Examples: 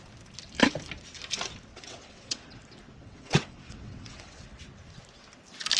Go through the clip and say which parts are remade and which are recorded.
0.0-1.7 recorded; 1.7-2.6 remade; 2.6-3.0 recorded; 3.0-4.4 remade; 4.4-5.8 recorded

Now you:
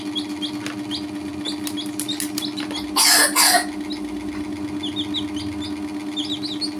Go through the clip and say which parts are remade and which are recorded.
0.0-6.8 recorded

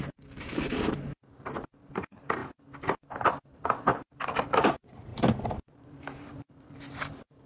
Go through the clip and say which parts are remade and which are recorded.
0.0-2.4 remade; 2.4-3.1 recorded; 3.1-7.5 remade